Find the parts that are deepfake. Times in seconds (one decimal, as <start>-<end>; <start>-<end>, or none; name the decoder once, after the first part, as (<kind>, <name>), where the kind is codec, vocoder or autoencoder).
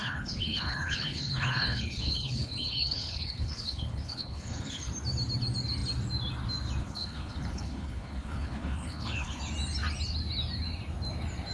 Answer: 0.0-4.9 (codec, HILCodec); 6.8-9.4